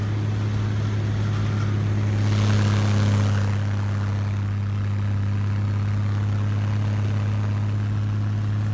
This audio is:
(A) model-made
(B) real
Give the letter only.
B